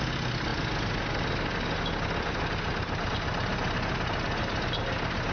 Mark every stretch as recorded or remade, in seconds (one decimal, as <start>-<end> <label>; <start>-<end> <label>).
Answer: 0.0-5.3 recorded